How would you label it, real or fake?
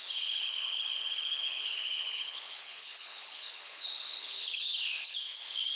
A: fake